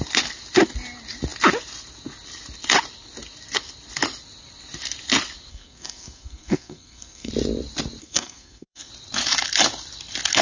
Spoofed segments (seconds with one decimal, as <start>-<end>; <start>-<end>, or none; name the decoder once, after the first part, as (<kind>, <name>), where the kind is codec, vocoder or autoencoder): 5.5-7.3 (codec, SNAC); 8.0-8.9